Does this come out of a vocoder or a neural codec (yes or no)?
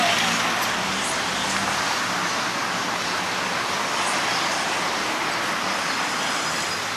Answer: no